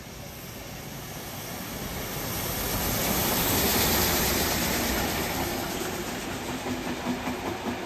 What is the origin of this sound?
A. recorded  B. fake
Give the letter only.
A